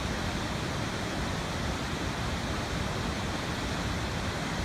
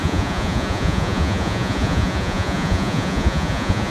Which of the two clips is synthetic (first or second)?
second